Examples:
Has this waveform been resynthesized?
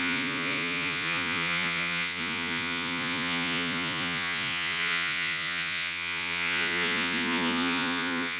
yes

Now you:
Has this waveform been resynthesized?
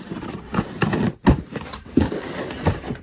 yes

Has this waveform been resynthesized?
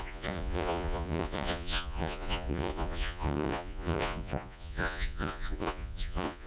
yes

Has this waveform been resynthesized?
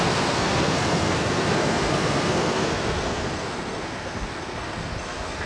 yes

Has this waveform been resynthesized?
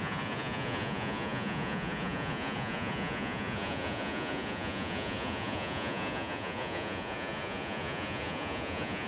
yes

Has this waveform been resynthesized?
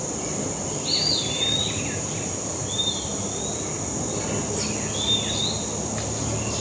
no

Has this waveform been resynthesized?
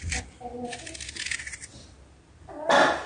no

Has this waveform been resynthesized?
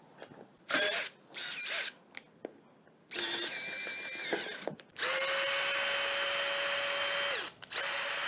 no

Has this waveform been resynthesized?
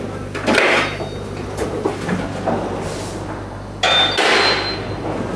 no